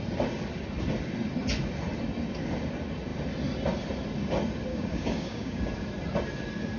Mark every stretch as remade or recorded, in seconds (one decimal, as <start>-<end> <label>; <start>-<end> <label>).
0.0-4.7 recorded; 4.7-5.6 remade; 5.6-6.8 recorded